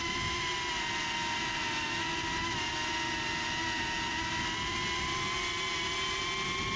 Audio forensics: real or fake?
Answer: real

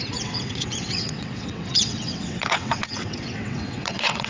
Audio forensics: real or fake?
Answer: fake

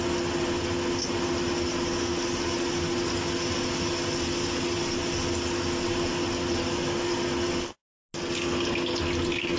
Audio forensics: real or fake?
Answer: real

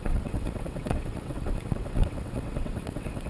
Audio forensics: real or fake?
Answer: fake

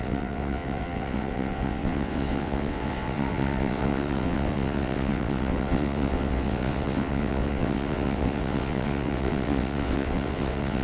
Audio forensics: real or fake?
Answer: fake